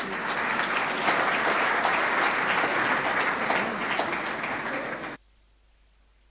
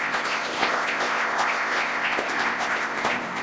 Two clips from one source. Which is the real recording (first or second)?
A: first